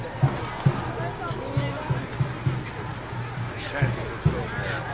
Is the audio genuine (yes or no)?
yes